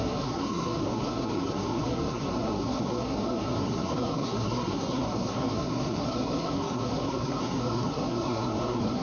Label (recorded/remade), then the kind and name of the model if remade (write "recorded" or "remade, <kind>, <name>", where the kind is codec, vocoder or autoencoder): remade, codec, SNAC